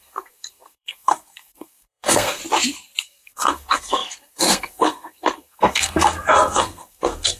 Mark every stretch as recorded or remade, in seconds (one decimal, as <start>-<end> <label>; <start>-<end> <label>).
0.0-2.4 remade; 2.4-3.0 recorded; 3.0-7.4 remade